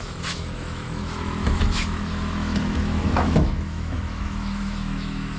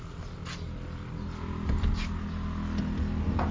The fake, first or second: first